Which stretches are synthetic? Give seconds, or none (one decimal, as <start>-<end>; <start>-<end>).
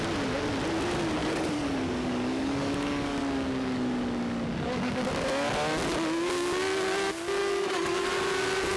1.2-5.1; 7.4-8.1